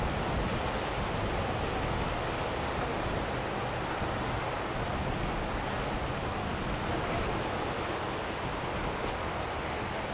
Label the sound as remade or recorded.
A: recorded